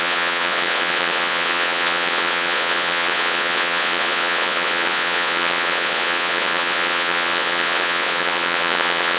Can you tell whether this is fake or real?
fake